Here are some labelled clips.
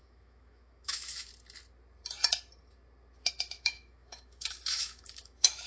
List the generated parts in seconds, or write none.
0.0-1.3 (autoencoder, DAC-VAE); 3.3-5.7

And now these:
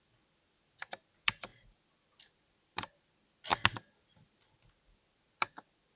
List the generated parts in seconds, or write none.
none

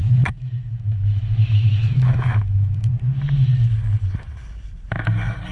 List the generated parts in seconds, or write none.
0.0-2.9 (autoencoder, DAC-VAE)